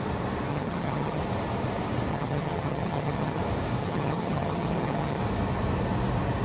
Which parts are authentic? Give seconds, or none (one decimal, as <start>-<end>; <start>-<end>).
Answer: 0.0-0.5; 1.2-2.1; 3.4-3.8; 5.2-6.4